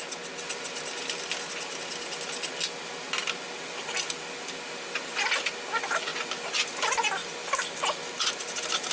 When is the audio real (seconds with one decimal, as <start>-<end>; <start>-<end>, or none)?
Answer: 0.0-8.9